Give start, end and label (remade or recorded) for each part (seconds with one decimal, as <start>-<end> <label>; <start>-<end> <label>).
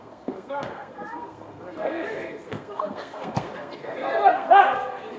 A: 0.0-5.2 remade